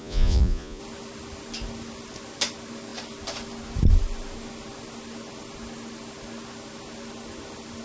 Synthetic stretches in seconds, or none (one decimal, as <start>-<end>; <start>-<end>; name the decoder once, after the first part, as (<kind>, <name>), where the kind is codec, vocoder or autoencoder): 0.0-0.8 (vocoder, Vocos)